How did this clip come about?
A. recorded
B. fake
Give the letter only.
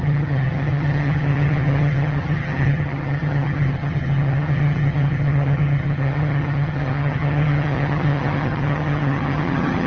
B